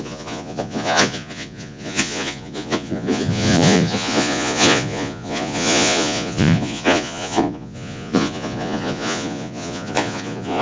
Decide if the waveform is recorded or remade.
remade